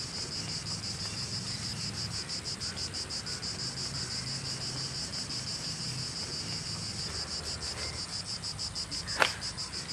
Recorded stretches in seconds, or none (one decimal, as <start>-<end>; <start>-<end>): 0.0-9.9